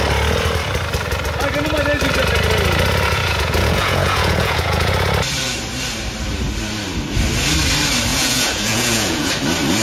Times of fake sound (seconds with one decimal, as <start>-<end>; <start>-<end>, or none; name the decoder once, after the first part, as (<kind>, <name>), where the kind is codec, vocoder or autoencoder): 3.1-4.9 (vocoder, Vocos); 8.1-9.3